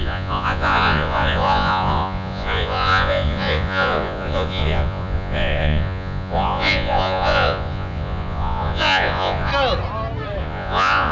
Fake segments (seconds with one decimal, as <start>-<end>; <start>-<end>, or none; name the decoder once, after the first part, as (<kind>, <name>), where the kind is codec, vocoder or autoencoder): 0.0-9.5 (vocoder, Vocos); 10.4-11.1